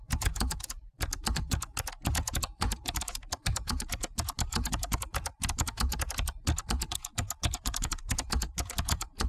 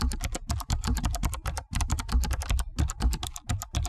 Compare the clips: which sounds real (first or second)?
second